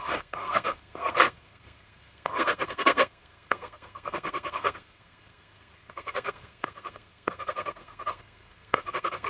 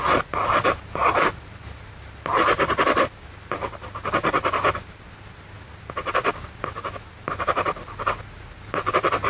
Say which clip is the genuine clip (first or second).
second